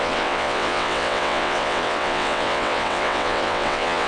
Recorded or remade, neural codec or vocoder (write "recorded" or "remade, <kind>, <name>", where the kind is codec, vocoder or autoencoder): remade, vocoder, WaveNeXt